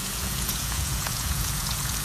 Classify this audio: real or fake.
fake